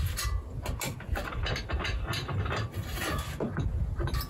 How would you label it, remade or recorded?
recorded